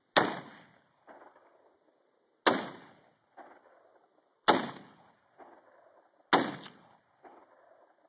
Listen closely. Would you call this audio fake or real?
real